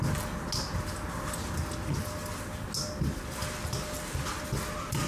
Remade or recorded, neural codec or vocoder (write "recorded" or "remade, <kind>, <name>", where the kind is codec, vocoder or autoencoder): recorded